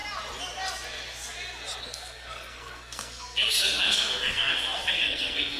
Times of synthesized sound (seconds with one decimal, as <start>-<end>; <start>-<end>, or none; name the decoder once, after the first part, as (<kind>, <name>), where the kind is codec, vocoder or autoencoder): 1.8-5.6 (codec, SNAC)